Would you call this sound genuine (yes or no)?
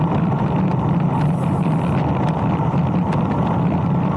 yes